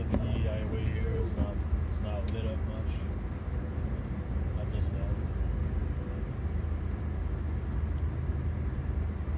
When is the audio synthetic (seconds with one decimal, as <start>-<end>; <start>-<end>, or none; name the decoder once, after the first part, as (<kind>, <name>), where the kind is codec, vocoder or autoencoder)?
none